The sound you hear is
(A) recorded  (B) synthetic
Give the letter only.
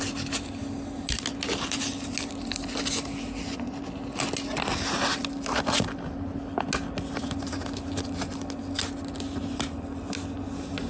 A